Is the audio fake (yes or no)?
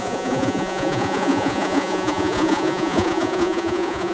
yes